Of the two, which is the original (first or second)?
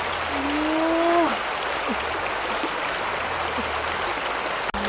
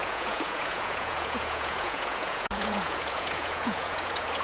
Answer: first